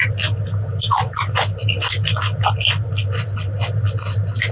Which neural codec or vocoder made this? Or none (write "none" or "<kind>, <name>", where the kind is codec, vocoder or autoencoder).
none